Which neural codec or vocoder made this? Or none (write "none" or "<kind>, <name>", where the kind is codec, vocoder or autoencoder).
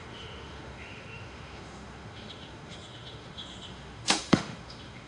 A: autoencoder, DAC-VAE